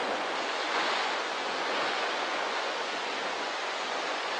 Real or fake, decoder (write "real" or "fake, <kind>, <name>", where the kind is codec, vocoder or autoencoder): fake, vocoder, Vocos